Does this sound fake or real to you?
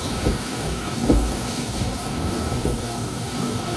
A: fake